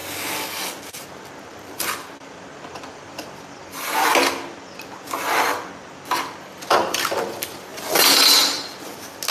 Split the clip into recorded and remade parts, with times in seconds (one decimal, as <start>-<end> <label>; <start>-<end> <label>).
0.0-0.9 recorded; 0.9-4.1 remade; 4.1-6.4 recorded; 6.4-7.7 remade; 7.7-9.3 recorded